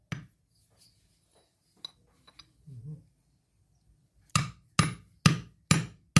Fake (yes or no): no